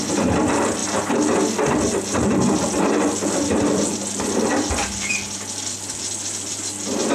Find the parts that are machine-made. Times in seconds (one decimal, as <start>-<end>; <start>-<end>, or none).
none